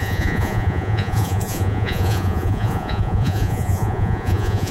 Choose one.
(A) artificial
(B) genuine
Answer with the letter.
A